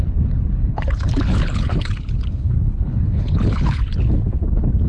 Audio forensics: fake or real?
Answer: fake